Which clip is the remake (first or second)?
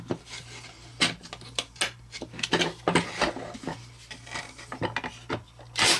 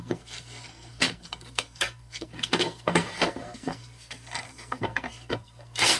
second